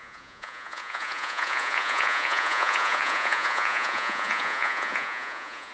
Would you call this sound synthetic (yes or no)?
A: yes